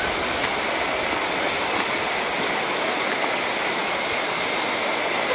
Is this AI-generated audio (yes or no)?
no